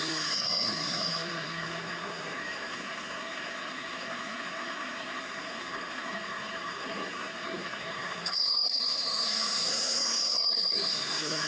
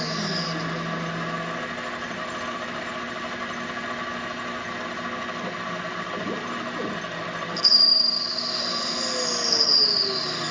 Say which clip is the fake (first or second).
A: first